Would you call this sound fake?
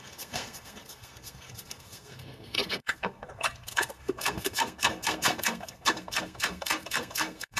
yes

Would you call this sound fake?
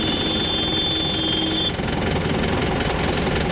no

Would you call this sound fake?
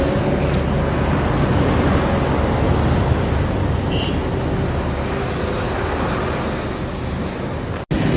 no